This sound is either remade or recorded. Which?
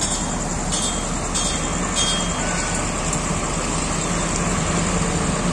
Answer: recorded